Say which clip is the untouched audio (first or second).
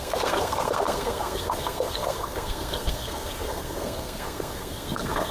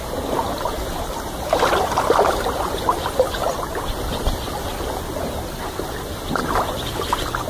second